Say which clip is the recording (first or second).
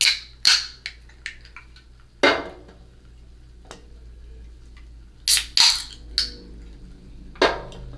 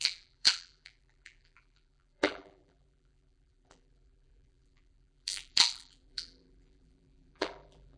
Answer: first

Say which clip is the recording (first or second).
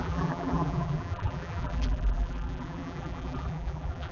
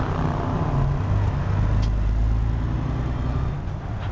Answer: second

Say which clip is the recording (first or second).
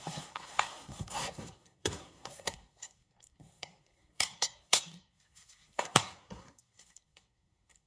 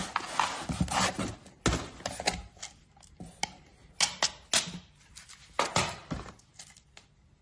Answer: second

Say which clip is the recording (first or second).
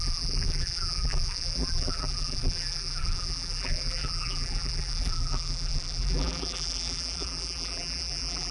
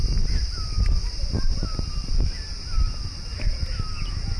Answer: second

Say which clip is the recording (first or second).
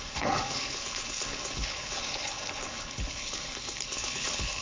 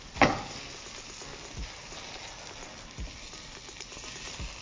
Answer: second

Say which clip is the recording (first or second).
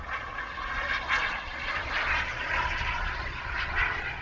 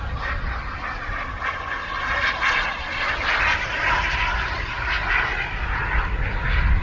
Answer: second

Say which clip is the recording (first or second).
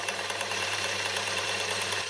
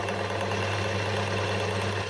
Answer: second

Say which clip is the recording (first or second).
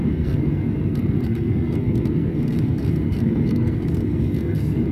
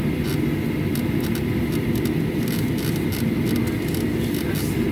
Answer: second